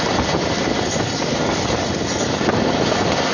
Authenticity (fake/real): real